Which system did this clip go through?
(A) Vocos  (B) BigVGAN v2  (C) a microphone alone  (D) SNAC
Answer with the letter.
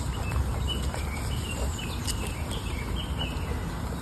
C